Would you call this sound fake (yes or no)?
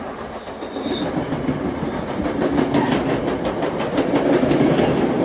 no